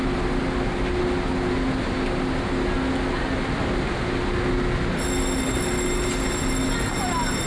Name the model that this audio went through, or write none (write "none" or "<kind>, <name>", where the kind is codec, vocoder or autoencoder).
none